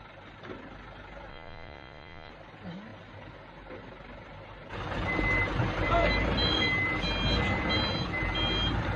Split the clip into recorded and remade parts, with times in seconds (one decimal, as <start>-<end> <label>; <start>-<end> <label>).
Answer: 0.0-1.3 recorded; 1.3-2.3 remade; 2.3-9.0 recorded